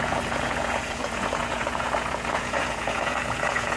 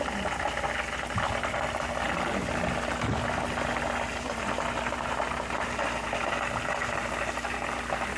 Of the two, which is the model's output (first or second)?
first